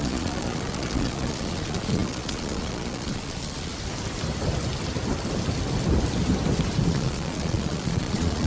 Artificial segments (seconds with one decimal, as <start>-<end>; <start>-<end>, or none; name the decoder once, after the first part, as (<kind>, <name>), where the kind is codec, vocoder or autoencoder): 0.0-3.7 (vocoder, Vocos); 6.9-8.5